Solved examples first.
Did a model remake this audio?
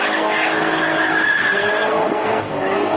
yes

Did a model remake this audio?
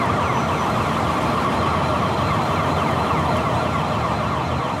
no